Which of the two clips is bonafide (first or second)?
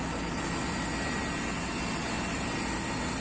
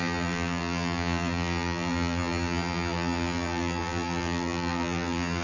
first